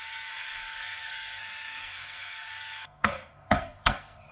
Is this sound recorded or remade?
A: remade